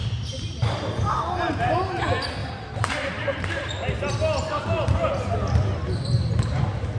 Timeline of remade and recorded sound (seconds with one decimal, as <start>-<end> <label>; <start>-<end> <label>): 0.0-1.9 remade; 1.9-2.4 recorded; 2.4-3.7 remade; 3.7-7.0 recorded